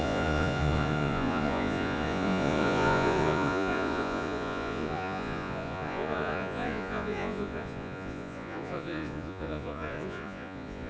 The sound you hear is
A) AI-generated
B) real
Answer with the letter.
A